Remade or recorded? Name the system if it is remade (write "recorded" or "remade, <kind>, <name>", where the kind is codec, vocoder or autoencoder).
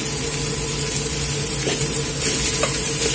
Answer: recorded